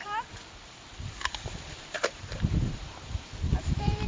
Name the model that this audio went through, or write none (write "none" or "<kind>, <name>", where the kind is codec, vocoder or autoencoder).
vocoder, BigVGAN v2